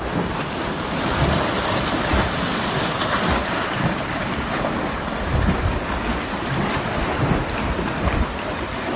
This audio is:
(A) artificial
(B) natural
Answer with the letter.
A